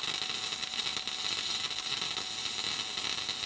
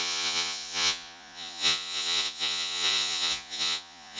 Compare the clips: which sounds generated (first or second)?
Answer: second